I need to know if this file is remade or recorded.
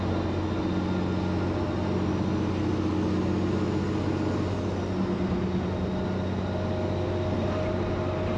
recorded